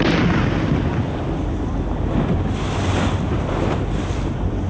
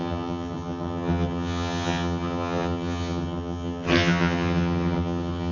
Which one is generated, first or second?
second